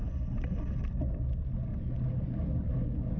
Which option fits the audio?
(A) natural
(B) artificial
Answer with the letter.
A